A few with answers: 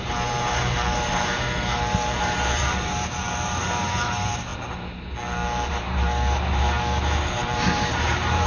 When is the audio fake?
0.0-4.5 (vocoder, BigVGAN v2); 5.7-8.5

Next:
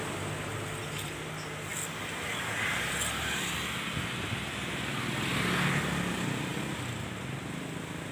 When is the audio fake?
none